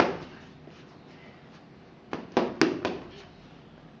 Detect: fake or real real